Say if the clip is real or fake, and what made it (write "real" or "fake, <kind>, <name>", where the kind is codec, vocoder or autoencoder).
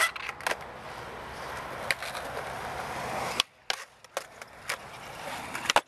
real